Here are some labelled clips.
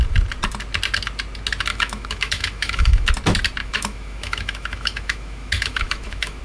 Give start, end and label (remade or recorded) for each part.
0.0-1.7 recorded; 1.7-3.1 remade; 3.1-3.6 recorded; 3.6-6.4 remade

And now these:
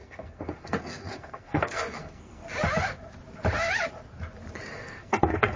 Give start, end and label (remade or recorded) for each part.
0.0-2.4 remade; 2.4-4.7 recorded; 4.7-5.6 remade

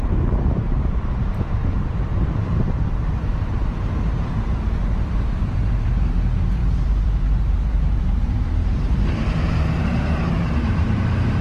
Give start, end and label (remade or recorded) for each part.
0.0-1.6 remade; 1.6-2.3 recorded; 2.3-11.4 remade

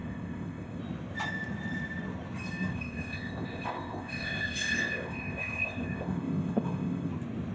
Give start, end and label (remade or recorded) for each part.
0.0-0.8 remade; 0.8-2.7 recorded; 2.7-7.1 remade; 7.1-7.5 recorded

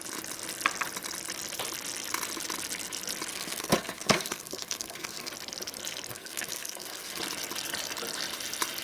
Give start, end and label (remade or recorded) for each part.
0.0-3.3 recorded; 3.3-5.3 remade; 5.3-6.1 recorded; 6.1-7.2 remade; 7.2-8.8 recorded

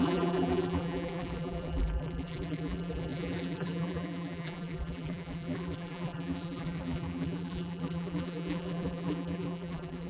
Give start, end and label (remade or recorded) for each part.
0.0-10.1 remade